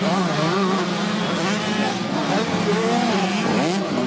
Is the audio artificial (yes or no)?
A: no